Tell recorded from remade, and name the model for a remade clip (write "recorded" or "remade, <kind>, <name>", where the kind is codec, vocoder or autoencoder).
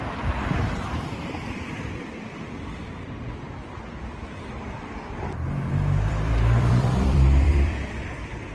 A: remade, vocoder, BigVGAN v2